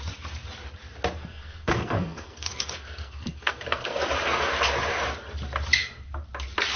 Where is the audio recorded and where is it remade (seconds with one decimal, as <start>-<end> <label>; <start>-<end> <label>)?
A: 0.0-1.2 recorded; 1.2-4.0 remade; 4.0-6.8 recorded